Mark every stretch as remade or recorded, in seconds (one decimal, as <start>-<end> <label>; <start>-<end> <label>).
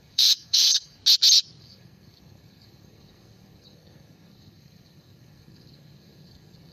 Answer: 0.0-1.0 remade; 1.0-1.6 recorded; 1.6-6.7 remade